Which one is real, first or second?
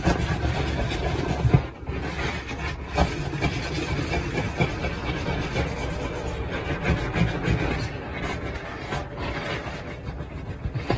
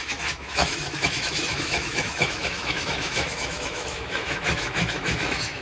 first